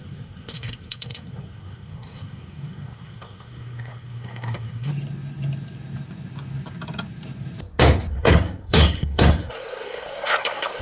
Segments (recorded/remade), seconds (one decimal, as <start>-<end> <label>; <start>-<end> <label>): 0.0-4.9 remade; 4.9-8.1 recorded; 8.1-10.8 remade